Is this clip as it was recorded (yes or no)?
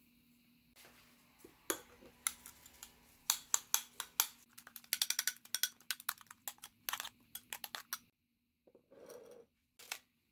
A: yes